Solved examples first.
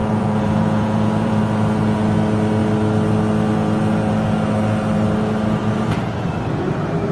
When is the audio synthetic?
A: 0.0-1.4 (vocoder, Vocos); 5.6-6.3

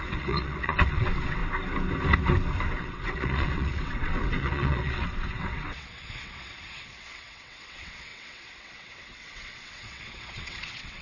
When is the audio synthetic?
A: 0.0-1.4 (vocoder, WaveNeXt); 2.8-11.0

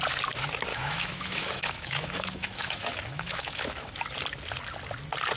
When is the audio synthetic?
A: 0.7-3.9 (autoencoder, DAC-VAE)

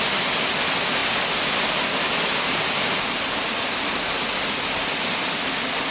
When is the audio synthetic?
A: none